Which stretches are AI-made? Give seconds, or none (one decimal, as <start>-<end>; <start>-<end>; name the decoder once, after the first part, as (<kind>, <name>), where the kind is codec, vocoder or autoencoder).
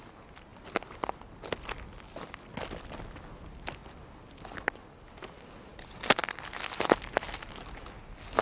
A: none